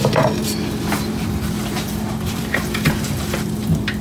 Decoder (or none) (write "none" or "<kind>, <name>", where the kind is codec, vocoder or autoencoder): vocoder, BigVGAN v2